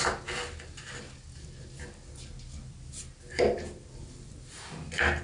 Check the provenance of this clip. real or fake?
real